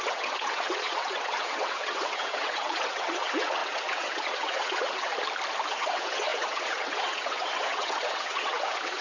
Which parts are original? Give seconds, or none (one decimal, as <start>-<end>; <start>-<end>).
5.1-5.7